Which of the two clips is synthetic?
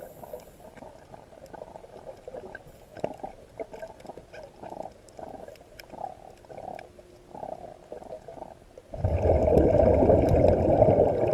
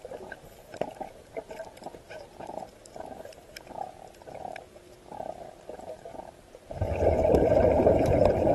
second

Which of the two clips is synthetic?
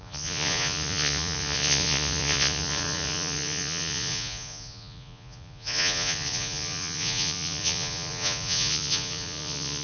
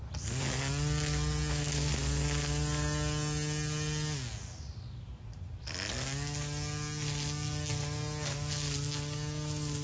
first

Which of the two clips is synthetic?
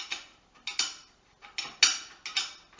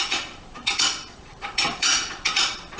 second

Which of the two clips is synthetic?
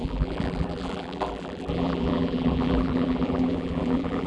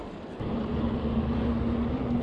first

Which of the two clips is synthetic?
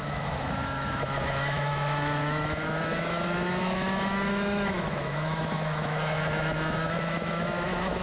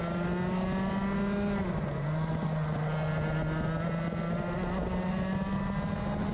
first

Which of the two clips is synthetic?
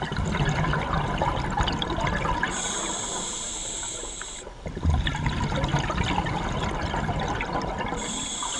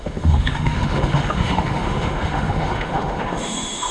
second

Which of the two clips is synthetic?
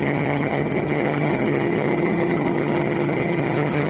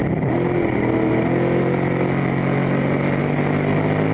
first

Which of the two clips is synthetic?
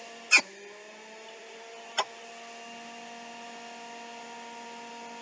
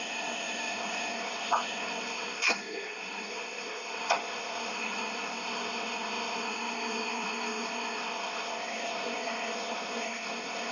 second